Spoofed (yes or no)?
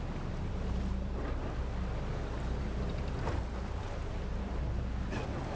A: no